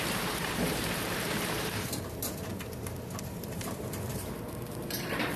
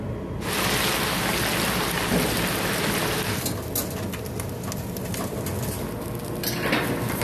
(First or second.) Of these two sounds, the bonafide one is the second